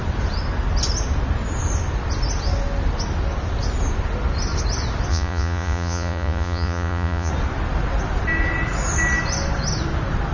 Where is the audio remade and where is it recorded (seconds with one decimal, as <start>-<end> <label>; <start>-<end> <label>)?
0.0-5.1 recorded; 5.1-7.3 remade; 7.3-10.3 recorded